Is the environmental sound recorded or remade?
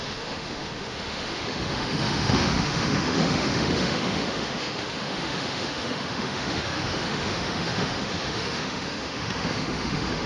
remade